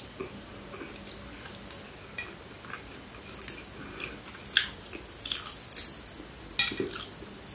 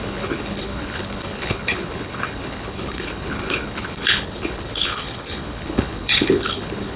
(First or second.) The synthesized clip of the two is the second